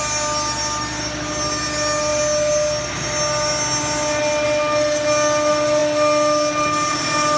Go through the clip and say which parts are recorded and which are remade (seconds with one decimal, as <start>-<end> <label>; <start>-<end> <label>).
0.0-7.4 recorded